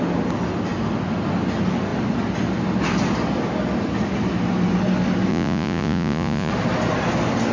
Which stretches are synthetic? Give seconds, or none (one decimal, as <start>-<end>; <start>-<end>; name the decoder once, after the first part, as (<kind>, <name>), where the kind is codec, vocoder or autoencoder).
5.3-6.5 (vocoder, Vocos)